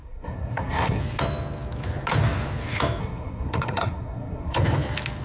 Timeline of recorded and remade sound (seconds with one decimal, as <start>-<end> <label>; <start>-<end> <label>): 0.0-1.0 remade; 1.0-3.0 recorded; 3.0-4.6 remade; 4.6-5.2 recorded